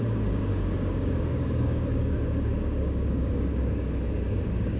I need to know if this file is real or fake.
fake